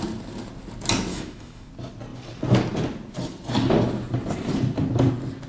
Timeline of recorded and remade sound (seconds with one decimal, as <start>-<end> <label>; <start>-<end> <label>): 0.0-1.1 recorded; 1.1-1.7 remade; 1.7-5.5 recorded